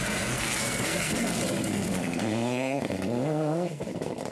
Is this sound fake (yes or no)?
yes